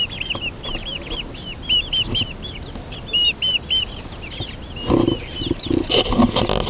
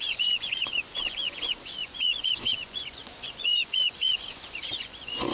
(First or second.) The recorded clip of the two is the first